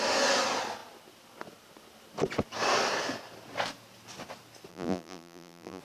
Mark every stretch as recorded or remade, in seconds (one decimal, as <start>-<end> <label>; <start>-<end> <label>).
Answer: 0.0-4.7 recorded; 4.7-5.8 remade